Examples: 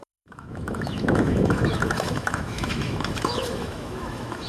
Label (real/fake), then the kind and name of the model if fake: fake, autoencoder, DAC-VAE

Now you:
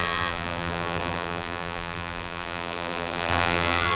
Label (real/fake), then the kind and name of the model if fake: fake, vocoder, BigVGAN v2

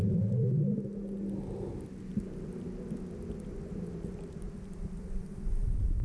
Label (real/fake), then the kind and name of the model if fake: real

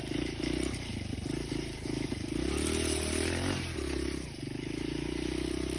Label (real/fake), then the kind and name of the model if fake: real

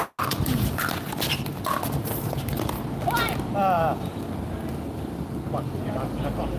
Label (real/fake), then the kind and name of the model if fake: real